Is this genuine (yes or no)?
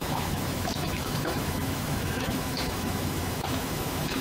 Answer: no